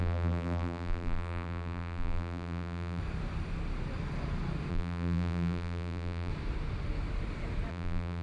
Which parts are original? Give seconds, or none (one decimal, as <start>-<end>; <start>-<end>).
3.0-4.7; 6.3-7.7